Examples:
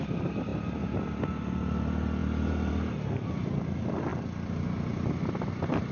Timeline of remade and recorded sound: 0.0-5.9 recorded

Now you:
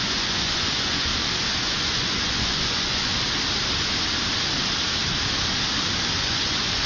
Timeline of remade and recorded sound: 0.0-1.1 remade; 1.1-1.6 recorded; 1.6-3.1 remade; 3.1-6.2 recorded; 6.2-6.9 remade

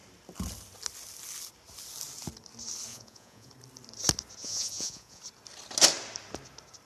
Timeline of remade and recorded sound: 0.0-2.9 recorded; 2.9-3.5 remade; 3.5-4.4 recorded; 4.4-5.2 remade; 5.2-6.9 recorded

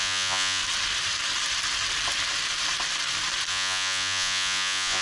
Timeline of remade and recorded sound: 0.0-0.6 remade; 0.6-3.5 recorded; 3.5-5.0 remade

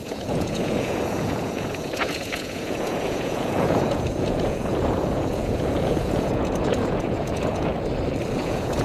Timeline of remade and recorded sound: 0.0-7.7 remade; 7.7-8.3 recorded; 8.3-8.8 remade

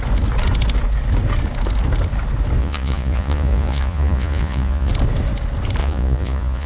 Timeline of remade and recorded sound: 0.0-2.6 recorded; 2.6-4.9 remade; 4.9-5.8 recorded; 5.8-6.7 remade